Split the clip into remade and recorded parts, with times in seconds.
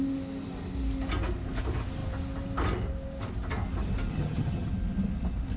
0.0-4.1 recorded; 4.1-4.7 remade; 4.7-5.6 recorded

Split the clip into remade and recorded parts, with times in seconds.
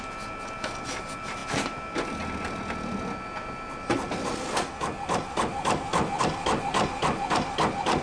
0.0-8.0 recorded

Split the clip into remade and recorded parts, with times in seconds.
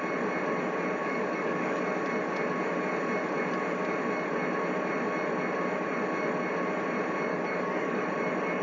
0.0-1.0 recorded; 1.0-1.8 remade; 1.8-7.3 recorded; 7.3-8.1 remade; 8.1-8.6 recorded